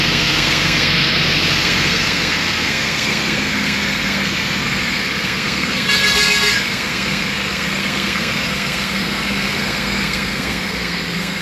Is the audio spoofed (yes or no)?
yes